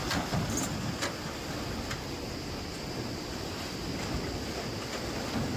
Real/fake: real